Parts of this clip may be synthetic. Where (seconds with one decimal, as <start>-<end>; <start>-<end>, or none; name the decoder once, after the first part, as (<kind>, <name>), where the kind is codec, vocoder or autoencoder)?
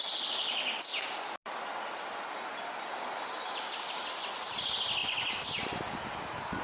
5.0-5.6 (vocoder, BigVGAN v2)